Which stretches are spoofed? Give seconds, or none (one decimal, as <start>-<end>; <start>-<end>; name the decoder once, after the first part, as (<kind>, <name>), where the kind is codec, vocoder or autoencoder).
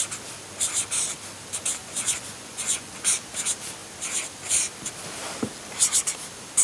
1.8-3.1 (vocoder, Vocos)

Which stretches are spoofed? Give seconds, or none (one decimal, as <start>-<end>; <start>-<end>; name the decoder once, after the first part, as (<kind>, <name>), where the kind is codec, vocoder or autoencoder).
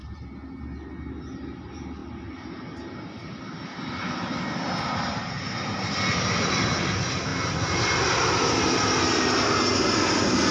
none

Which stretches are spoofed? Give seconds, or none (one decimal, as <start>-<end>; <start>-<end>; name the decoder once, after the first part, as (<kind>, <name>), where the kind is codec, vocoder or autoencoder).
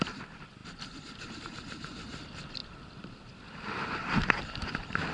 0.0-5.1 (vocoder, BigVGAN v2)